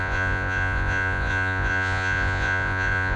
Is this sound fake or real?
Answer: fake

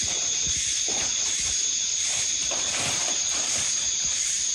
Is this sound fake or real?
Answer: fake